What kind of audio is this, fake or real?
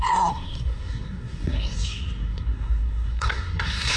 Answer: fake